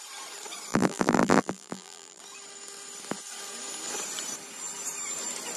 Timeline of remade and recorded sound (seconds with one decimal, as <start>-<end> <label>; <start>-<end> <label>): 0.0-0.7 recorded; 0.7-2.2 remade; 2.2-5.6 recorded